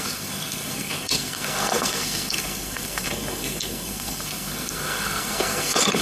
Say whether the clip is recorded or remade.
remade